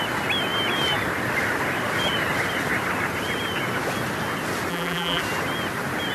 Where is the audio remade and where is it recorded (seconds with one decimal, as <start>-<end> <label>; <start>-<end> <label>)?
0.0-4.7 recorded; 4.7-5.2 remade; 5.2-6.1 recorded